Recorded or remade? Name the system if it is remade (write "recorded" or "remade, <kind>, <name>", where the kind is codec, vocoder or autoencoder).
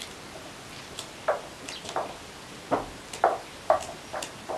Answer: recorded